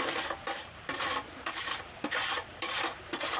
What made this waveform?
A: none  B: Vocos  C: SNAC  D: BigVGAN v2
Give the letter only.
D